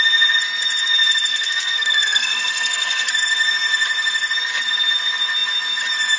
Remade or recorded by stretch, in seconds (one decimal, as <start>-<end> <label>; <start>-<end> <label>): 0.0-1.3 recorded; 1.3-3.1 remade; 3.1-6.2 recorded